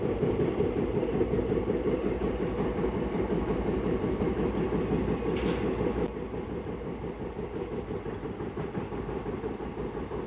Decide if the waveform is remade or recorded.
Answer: recorded